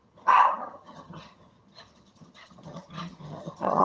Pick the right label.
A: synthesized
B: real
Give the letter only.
A